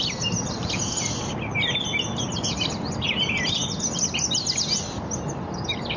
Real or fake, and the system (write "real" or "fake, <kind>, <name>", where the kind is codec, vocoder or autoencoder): real